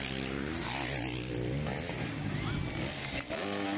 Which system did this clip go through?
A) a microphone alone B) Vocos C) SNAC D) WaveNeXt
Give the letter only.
A